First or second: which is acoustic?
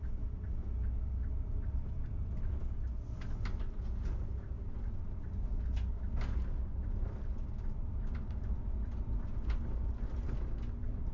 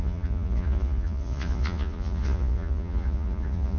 first